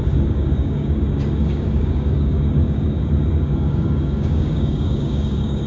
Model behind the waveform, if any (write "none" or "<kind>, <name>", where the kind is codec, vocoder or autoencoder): codec, DAC